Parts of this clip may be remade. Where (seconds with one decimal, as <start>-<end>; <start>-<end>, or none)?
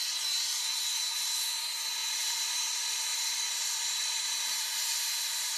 none